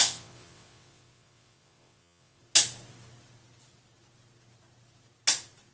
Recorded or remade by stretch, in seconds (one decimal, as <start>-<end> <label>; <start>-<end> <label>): 0.0-2.4 remade; 2.4-5.7 recorded